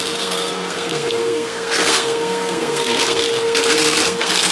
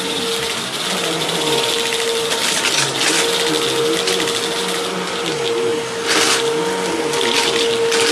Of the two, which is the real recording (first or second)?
second